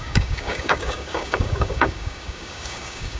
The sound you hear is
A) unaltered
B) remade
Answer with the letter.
B